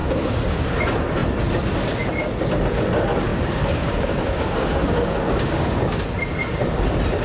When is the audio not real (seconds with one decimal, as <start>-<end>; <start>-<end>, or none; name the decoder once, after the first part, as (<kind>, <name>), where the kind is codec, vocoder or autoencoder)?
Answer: 0.0-0.6 (codec, DAC); 3.3-6.0